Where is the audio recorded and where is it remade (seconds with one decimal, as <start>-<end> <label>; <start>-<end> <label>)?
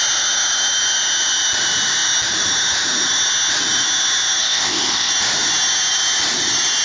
0.0-4.4 recorded; 4.4-5.1 remade; 5.1-6.8 recorded